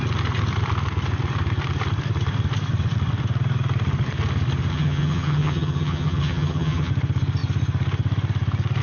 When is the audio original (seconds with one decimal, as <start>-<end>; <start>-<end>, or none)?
0.0-4.7; 6.9-8.8